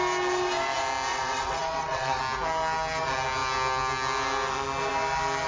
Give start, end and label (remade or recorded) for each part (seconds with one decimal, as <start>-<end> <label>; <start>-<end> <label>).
0.0-1.1 recorded; 1.1-2.2 remade; 2.2-5.5 recorded

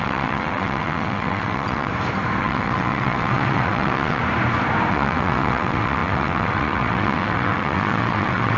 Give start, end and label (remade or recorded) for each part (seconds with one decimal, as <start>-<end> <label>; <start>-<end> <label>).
0.0-1.9 remade; 1.9-2.4 recorded; 2.4-4.2 remade; 4.2-4.9 recorded; 4.9-8.6 remade